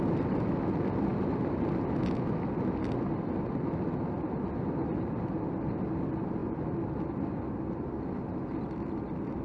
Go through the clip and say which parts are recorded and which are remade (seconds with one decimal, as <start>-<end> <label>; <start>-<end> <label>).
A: 0.0-9.4 recorded